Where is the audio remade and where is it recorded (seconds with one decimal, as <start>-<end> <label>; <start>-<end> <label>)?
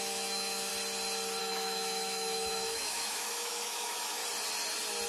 0.0-0.7 remade; 0.7-1.4 recorded; 1.4-4.2 remade; 4.2-5.1 recorded